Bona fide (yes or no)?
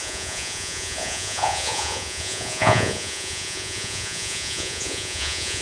no